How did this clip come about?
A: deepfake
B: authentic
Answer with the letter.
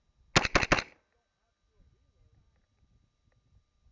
B